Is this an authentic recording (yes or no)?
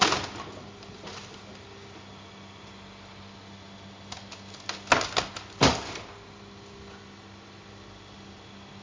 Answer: yes